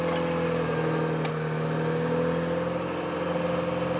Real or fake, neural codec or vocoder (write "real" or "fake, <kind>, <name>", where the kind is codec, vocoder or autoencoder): real